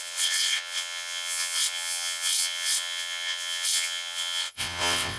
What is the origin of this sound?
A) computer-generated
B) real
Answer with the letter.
A